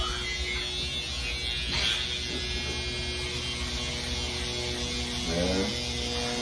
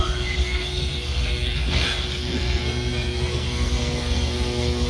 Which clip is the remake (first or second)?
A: second